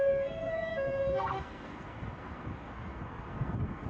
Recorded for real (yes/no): no